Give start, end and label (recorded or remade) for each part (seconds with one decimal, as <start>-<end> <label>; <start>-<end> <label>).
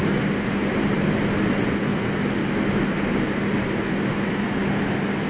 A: 0.0-0.7 recorded; 0.7-1.2 remade; 1.2-5.3 recorded